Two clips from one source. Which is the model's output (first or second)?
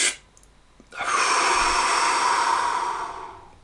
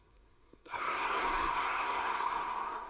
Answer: second